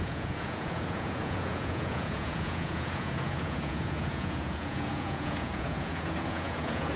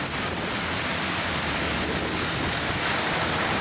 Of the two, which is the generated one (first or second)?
first